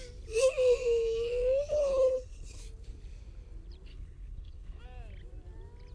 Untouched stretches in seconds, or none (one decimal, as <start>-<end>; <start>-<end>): 0.0-1.7; 2.6-3.9; 4.8-5.9